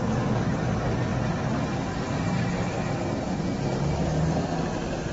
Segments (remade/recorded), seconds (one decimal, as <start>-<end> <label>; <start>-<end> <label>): 0.0-1.1 recorded; 1.1-2.2 remade; 2.2-5.1 recorded